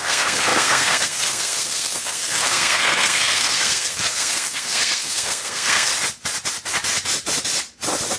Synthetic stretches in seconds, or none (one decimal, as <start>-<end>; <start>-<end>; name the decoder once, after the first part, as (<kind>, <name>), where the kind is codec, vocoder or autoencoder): 0.0-5.9 (codec, SNAC)